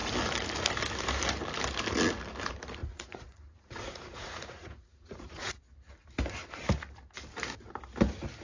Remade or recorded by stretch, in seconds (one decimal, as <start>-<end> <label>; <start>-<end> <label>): 0.0-2.8 recorded; 2.8-5.6 remade; 5.6-8.4 recorded